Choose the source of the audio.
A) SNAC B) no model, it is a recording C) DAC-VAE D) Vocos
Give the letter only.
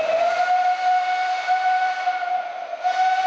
B